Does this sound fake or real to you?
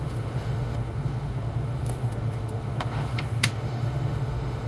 fake